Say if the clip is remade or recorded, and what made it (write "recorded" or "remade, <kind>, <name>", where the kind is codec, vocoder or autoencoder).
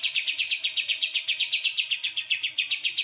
remade, vocoder, Vocos